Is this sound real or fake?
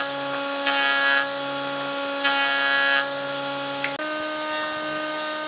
real